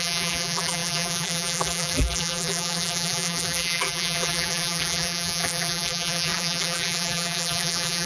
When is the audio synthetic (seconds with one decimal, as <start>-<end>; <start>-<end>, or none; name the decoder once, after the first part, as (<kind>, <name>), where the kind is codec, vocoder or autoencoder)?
0.0-8.1 (vocoder, BigVGAN v2)